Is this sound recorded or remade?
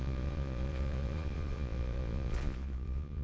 remade